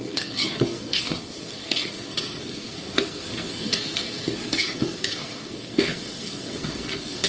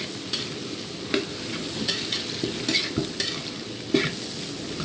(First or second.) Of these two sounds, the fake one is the first